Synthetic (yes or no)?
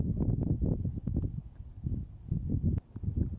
no